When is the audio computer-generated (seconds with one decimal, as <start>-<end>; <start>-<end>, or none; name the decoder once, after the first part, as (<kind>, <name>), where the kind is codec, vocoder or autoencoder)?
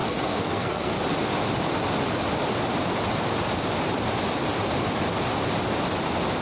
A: 0.0-1.0 (codec, SNAC)